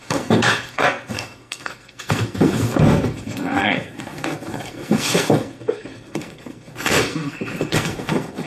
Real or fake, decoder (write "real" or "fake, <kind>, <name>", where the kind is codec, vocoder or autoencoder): fake, codec, SNAC